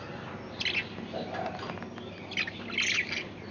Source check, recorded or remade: recorded